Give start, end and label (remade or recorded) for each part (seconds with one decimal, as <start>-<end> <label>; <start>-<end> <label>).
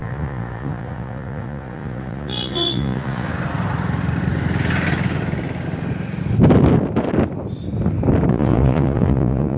0.0-3.3 remade; 3.3-8.3 recorded; 8.3-9.6 remade